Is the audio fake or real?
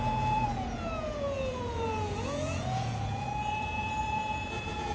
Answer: fake